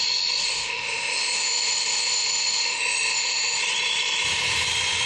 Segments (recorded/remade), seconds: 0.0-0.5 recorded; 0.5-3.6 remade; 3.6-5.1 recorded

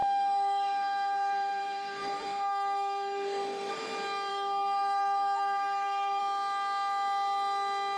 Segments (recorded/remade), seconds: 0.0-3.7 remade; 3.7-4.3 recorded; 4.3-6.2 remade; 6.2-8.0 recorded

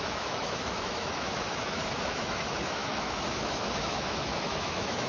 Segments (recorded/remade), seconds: 0.0-5.1 remade

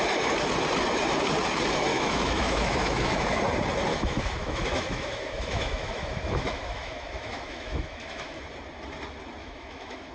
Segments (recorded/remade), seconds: 0.0-1.9 recorded; 1.9-3.4 remade; 3.4-3.9 recorded; 3.9-8.4 remade; 8.4-9.4 recorded; 9.4-10.1 remade